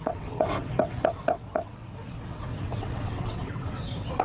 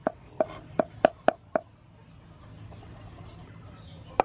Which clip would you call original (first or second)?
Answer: second